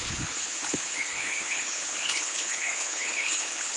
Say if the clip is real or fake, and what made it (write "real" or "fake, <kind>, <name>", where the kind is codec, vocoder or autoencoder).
fake, codec, HILCodec